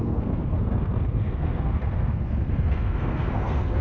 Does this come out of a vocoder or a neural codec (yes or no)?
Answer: yes